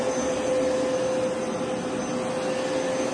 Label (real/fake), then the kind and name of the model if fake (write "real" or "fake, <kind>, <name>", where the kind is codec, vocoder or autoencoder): real